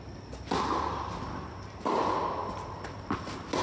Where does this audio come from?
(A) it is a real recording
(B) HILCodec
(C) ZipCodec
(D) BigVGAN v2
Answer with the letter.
A